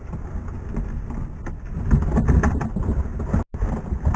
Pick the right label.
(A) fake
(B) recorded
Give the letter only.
B